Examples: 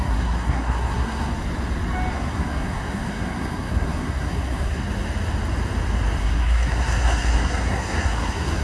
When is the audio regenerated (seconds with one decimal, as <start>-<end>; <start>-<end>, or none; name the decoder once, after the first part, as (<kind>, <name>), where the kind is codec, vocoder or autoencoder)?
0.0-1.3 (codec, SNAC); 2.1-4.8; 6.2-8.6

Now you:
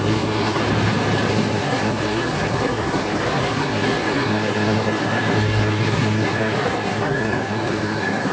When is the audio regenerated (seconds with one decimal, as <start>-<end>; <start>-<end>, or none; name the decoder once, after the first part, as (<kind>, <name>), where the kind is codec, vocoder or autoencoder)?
0.0-0.6 (codec, SNAC); 1.3-8.3

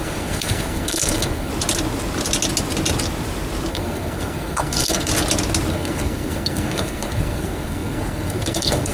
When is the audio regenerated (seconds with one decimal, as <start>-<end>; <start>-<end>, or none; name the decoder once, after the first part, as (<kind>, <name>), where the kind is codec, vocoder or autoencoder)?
0.0-1.5 (codec, SNAC); 3.7-5.1; 5.7-8.9